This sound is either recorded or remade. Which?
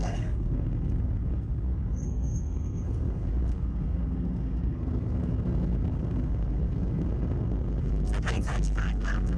remade